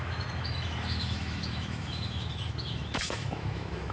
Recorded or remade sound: remade